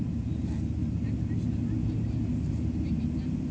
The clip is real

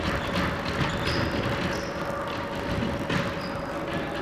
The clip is real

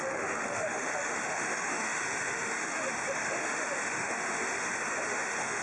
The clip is fake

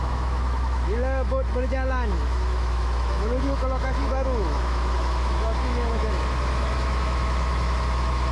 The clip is fake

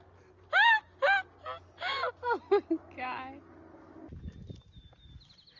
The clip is real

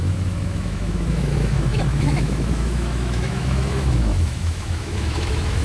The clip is fake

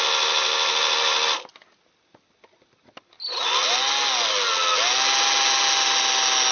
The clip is real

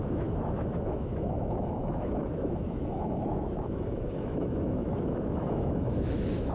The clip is fake